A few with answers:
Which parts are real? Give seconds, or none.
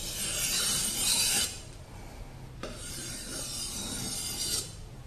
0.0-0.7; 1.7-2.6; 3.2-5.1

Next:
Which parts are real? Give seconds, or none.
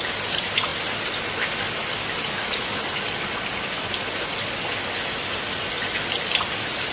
0.0-6.9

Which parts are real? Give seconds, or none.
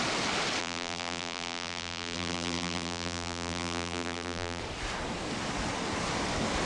0.0-0.6; 4.6-6.7